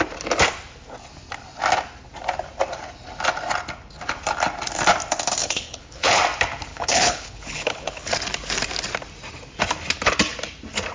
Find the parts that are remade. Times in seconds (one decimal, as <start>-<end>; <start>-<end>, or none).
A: 5.4-6.2; 6.7-8.1